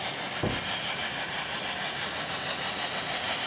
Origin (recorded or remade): recorded